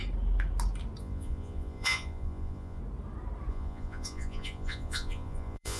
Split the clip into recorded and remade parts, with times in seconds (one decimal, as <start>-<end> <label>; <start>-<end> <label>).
0.0-1.0 recorded; 1.0-2.8 remade; 2.8-3.5 recorded; 3.5-5.8 remade